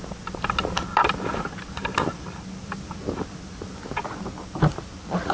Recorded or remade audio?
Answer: recorded